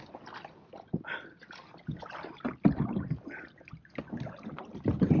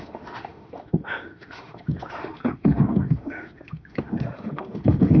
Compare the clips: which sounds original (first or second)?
first